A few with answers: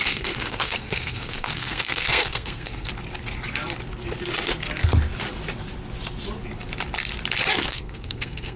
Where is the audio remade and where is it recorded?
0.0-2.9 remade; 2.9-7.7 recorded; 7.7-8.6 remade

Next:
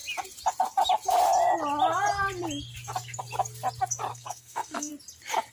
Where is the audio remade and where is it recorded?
0.0-4.1 recorded; 4.1-4.9 remade; 4.9-5.5 recorded